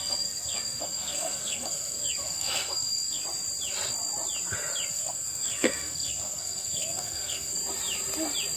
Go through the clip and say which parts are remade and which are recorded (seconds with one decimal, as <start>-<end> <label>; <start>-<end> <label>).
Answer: 0.0-3.2 remade; 3.2-4.9 recorded; 4.9-7.6 remade; 7.6-8.6 recorded